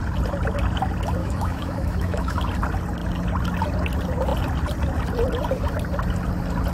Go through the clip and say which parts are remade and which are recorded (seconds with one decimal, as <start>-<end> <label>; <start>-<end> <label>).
0.0-1.2 recorded; 1.2-2.4 remade; 2.4-6.7 recorded